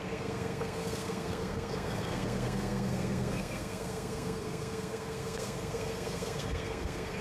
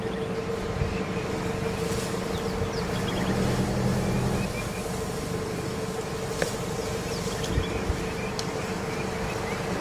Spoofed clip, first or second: first